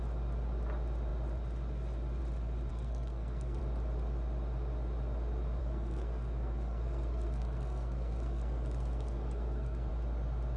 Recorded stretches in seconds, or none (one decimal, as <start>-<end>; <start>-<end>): 0.0-2.7; 3.6-5.6; 9.9-10.6